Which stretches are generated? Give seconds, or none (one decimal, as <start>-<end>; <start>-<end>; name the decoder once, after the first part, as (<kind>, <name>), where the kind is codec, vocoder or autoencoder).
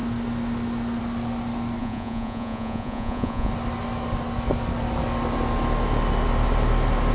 1.8-3.5 (vocoder, Vocos)